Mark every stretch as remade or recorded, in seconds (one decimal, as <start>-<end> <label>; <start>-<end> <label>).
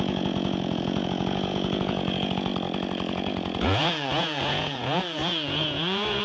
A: 0.0-2.5 remade; 2.5-3.1 recorded; 3.1-6.2 remade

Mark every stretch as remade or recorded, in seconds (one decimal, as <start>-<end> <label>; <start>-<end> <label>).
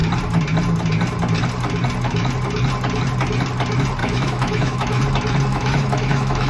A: 0.0-4.0 recorded; 4.0-5.0 remade; 5.0-5.5 recorded; 5.5-6.5 remade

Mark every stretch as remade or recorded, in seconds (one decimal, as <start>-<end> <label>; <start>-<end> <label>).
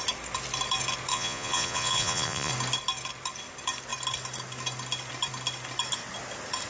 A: 0.0-1.1 recorded; 1.1-2.5 remade; 2.5-6.7 recorded